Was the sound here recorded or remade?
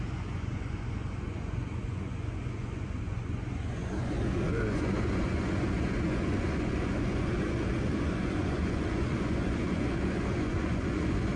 remade